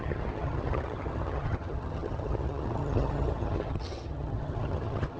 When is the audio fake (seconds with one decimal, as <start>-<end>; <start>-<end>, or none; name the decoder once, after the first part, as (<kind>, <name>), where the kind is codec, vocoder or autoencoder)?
0.0-5.2 (vocoder, HiFi-GAN)